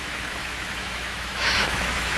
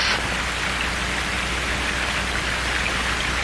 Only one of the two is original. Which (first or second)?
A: second